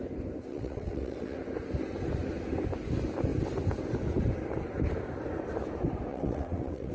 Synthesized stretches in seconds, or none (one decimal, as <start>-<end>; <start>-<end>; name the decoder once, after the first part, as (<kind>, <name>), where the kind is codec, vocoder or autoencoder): 0.5-1.4 (vocoder, WaveNeXt); 6.1-6.9